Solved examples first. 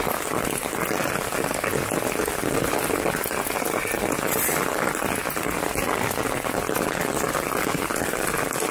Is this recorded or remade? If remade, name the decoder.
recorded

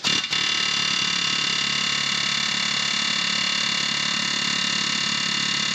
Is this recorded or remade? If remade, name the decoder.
recorded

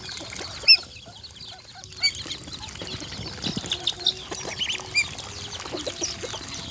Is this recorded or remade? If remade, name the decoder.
recorded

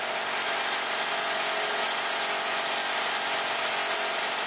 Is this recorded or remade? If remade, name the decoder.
remade, vocoder, BigVGAN v2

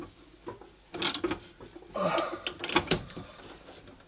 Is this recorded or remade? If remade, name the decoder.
recorded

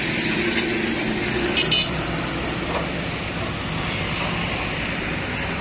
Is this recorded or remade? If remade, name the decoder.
recorded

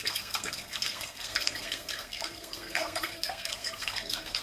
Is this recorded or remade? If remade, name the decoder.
remade, codec, SNAC